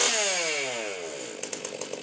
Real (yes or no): yes